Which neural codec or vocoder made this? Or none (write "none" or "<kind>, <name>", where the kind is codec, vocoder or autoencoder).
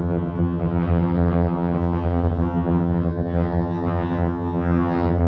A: vocoder, HiFi-GAN